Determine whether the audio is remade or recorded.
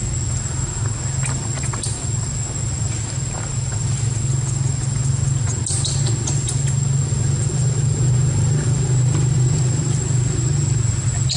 recorded